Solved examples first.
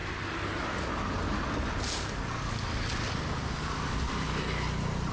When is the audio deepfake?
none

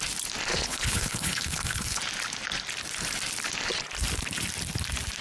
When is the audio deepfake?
0.5-2.0

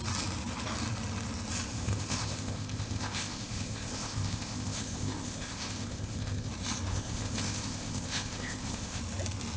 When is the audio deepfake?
1.7-6.5; 6.9-9.0